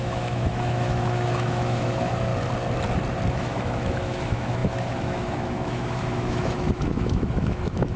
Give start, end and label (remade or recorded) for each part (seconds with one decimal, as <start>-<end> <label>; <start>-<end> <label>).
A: 0.0-2.3 remade; 2.3-3.3 recorded; 3.3-8.0 remade

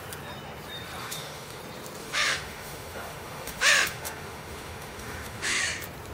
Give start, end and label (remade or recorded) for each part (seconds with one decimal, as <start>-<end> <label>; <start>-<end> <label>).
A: 0.0-1.0 recorded; 1.0-1.6 remade; 1.6-2.0 recorded; 2.0-5.6 remade; 5.6-6.1 recorded

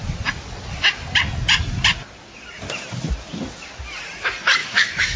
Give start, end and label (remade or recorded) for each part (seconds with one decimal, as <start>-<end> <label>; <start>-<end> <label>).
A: 0.0-4.6 recorded; 4.6-5.2 remade

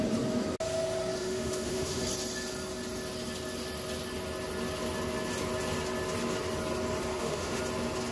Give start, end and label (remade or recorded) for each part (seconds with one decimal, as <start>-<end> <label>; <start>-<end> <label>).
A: 0.0-1.2 recorded; 1.2-2.0 remade; 2.0-7.1 recorded; 7.1-7.6 remade; 7.6-8.1 recorded

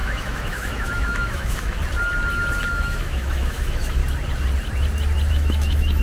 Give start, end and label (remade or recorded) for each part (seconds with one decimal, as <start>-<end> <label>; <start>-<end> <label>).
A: 0.0-1.8 remade; 1.8-2.7 recorded; 2.7-4.0 remade; 4.0-5.3 recorded; 5.3-6.0 remade